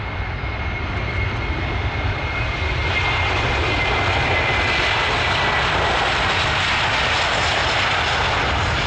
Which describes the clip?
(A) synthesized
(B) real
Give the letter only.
B